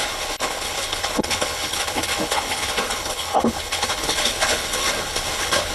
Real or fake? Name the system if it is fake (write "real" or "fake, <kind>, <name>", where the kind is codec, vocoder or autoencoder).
fake, codec, HILCodec